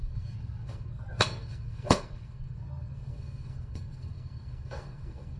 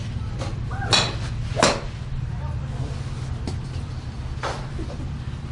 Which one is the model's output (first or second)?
first